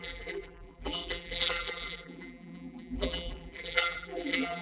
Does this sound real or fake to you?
fake